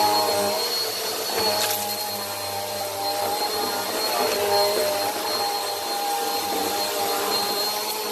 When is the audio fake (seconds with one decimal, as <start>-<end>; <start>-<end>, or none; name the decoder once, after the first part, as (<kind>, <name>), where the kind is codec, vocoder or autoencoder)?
none